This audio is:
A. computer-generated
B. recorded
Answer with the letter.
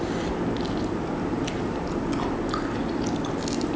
B